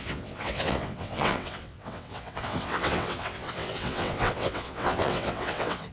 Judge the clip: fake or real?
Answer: fake